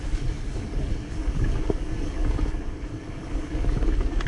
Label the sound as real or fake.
fake